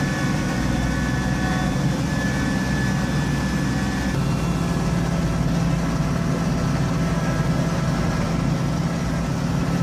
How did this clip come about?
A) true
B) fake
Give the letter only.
A